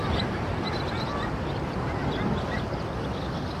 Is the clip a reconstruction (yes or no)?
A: no